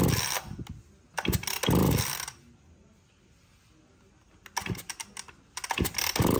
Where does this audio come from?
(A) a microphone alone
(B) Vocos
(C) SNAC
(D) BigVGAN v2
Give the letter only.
A